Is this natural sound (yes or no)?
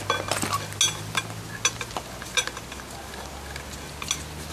yes